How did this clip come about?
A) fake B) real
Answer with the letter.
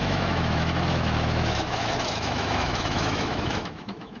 A